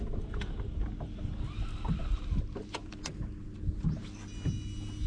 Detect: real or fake real